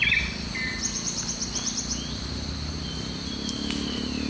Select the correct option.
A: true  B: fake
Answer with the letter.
A